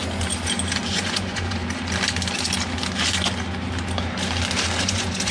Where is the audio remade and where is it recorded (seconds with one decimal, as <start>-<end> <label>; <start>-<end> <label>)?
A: 0.0-0.9 recorded; 0.9-1.6 remade; 1.6-4.8 recorded; 4.8-5.3 remade